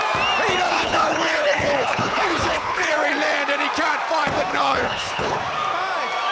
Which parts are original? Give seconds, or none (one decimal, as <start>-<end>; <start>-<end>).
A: 0.0-0.7; 2.9-4.5; 5.4-6.3